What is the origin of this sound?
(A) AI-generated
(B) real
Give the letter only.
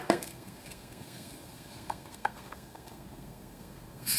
A